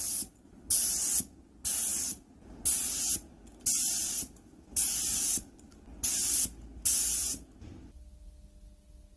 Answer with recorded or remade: recorded